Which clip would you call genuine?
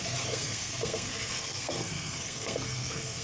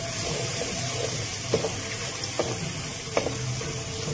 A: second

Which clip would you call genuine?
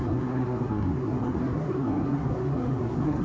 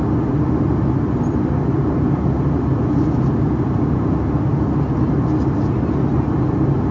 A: second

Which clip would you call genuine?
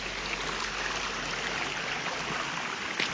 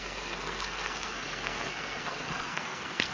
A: first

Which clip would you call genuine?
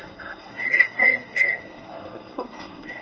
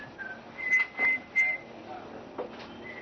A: second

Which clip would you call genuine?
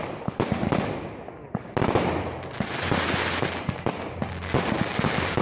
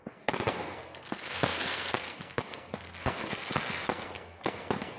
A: first